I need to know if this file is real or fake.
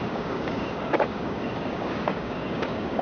fake